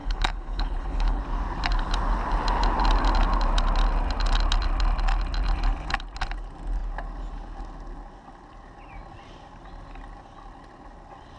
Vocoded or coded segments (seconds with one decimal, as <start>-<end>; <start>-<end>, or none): 0.0-1.2